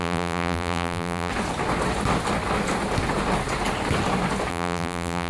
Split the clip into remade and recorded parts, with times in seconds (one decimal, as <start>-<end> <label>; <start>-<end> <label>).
0.0-1.3 remade; 1.3-4.5 recorded; 4.5-5.3 remade